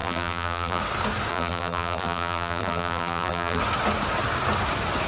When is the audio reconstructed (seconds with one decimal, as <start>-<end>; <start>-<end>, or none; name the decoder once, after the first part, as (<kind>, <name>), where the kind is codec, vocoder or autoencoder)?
0.0-0.8 (vocoder, BigVGAN v2); 1.3-3.6